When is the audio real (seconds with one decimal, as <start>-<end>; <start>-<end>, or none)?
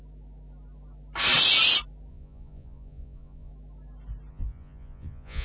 0.0-2.1; 3.5-4.3